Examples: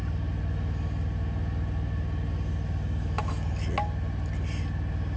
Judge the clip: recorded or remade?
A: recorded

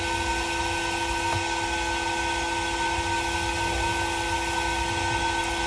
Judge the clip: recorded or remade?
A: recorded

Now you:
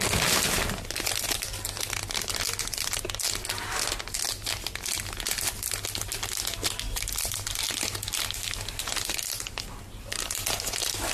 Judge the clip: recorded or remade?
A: recorded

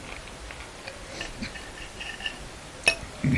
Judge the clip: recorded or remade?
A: recorded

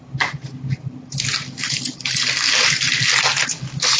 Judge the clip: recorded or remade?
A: recorded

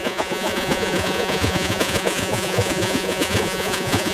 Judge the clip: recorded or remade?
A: remade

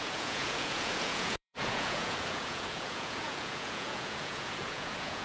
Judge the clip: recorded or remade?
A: remade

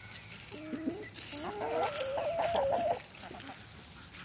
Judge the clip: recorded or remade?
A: recorded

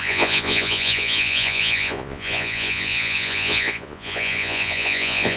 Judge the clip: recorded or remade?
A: remade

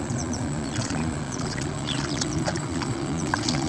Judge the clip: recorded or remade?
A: remade